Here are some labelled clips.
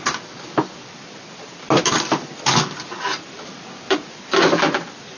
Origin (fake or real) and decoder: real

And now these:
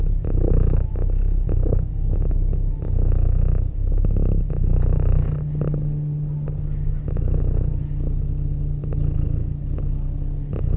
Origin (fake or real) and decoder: real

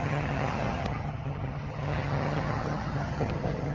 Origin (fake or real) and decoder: fake, vocoder, HiFi-GAN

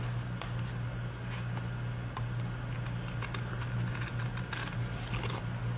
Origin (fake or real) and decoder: real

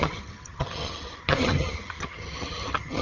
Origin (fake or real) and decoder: fake, vocoder, HiFi-GAN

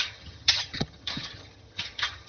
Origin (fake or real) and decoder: fake, vocoder, HiFi-GAN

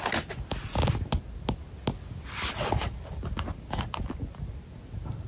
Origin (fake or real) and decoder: real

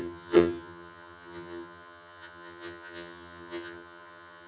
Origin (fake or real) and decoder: fake, vocoder, HiFi-GAN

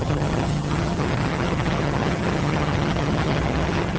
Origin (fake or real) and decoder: fake, vocoder, HiFi-GAN